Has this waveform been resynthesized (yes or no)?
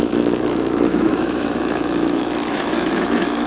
yes